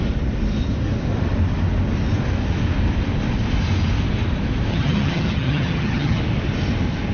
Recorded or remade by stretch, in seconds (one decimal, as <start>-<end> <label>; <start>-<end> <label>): 0.0-4.7 recorded; 4.7-6.2 remade; 6.2-7.1 recorded